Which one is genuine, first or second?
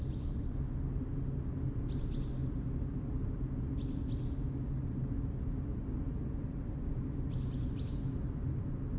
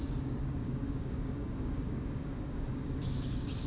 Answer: first